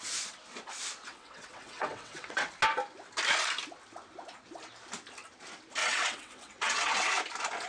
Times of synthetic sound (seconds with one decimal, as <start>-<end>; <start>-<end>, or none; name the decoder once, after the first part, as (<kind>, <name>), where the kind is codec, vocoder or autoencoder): 1.1-2.5 (vocoder, WaveNeXt); 5.8-7.1